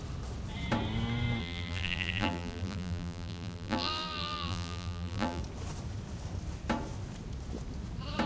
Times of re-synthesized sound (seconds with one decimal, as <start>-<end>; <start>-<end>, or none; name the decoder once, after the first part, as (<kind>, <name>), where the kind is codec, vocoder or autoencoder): 1.4-5.4 (vocoder, BigVGAN v2)